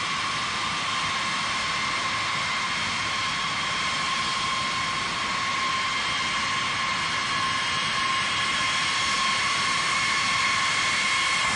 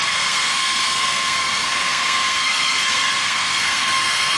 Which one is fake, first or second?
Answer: second